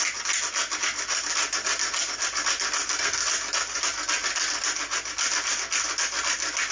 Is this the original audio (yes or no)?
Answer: yes